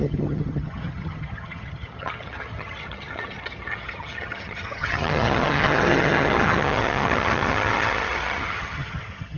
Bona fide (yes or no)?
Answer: no